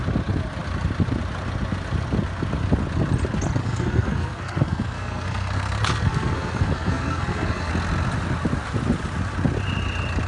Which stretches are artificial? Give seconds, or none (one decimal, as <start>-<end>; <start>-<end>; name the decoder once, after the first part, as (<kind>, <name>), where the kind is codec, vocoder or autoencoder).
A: 3.6-7.7 (codec, SNAC)

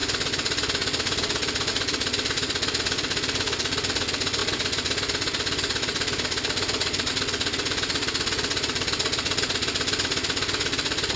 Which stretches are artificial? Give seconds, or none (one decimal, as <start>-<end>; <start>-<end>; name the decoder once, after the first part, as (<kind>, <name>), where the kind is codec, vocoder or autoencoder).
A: none

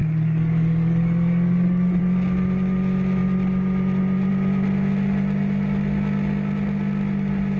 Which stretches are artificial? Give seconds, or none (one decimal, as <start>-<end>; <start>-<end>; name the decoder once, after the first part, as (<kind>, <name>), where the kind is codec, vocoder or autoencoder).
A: 0.0-2.0 (codec, DAC)

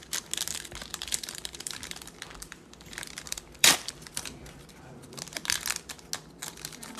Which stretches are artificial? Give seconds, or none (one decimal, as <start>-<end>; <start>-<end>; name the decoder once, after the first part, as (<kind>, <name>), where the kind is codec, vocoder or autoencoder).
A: 0.9-5.1 (vocoder, BigVGAN v2)

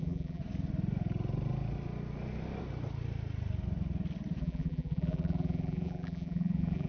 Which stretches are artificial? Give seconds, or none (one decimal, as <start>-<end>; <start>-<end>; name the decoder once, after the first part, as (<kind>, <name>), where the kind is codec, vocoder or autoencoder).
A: 0.0-0.4 (vocoder, BigVGAN v2); 4.4-6.9

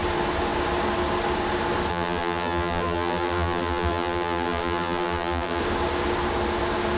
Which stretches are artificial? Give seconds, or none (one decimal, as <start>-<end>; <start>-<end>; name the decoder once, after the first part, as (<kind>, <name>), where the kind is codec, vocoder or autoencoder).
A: 1.9-5.6 (vocoder, BigVGAN v2)

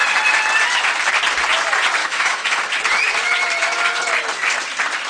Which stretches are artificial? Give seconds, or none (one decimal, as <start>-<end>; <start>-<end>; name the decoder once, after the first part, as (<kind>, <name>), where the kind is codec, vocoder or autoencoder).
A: 2.0-2.5 (autoencoder, DAC-VAE)